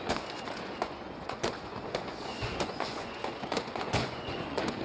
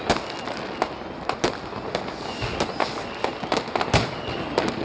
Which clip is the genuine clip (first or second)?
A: second